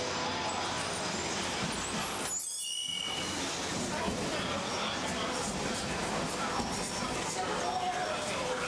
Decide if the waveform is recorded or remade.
recorded